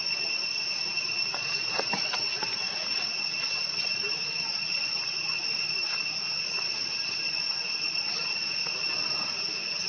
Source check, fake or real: real